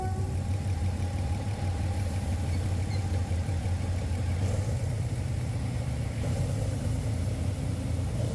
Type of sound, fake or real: fake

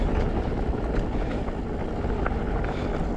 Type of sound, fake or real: real